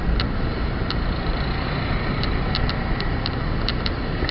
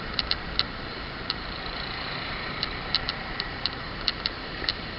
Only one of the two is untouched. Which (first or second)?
first